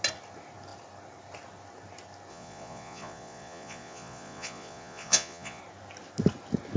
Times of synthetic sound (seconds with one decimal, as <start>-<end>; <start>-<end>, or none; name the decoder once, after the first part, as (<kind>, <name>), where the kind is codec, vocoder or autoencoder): 2.3-5.6 (vocoder, Vocos)